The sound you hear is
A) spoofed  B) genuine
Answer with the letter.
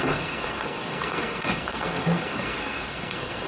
A